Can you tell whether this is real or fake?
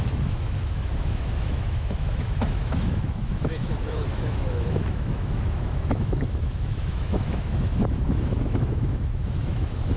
fake